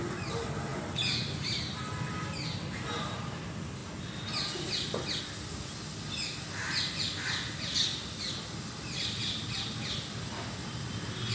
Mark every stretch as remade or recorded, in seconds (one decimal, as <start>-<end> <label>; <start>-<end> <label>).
0.0-0.7 recorded; 0.7-3.3 remade; 3.3-11.3 recorded